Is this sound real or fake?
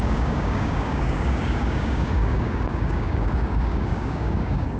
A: fake